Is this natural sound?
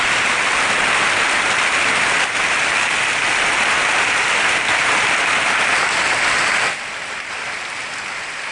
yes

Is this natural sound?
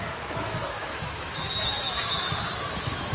no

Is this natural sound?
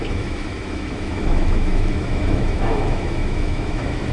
no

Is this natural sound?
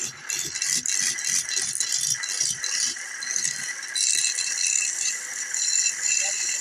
yes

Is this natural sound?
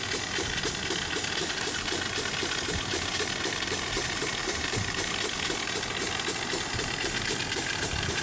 yes